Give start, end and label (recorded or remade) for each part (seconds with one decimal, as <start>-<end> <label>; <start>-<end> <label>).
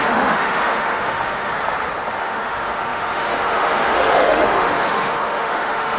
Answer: 0.0-1.5 remade; 1.5-2.2 recorded; 2.2-6.0 remade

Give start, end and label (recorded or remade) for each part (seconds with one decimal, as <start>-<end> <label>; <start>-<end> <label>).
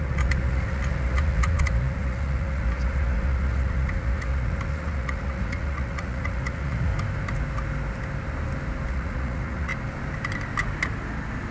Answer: 0.0-6.9 remade; 6.9-8.9 recorded; 8.9-9.7 remade; 9.7-11.5 recorded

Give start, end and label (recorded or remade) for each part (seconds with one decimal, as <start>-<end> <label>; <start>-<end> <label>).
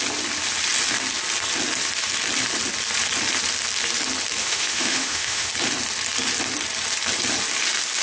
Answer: 0.0-4.4 recorded; 4.4-5.5 remade; 5.5-8.0 recorded